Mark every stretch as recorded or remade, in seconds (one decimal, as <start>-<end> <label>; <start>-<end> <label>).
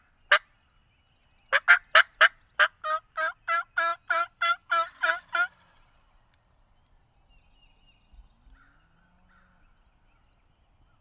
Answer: 0.0-3.9 recorded; 3.9-7.1 remade; 7.1-11.0 recorded